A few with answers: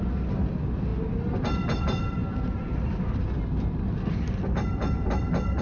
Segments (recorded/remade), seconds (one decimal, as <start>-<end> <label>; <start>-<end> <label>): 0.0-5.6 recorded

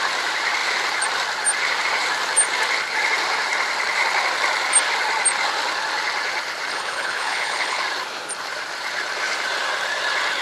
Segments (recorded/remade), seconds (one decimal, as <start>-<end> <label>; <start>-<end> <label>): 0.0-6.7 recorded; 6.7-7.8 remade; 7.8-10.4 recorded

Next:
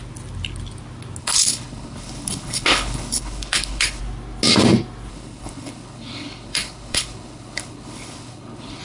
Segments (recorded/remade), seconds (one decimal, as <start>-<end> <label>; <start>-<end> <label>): 0.0-1.2 recorded; 1.2-4.0 remade; 4.0-5.1 recorded; 5.1-8.8 remade

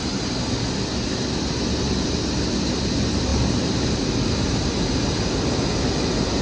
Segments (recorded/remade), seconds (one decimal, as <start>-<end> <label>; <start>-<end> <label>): 0.0-6.4 recorded